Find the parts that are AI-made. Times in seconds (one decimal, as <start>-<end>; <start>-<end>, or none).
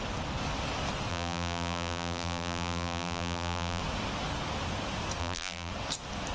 1.1-3.8; 5.2-5.7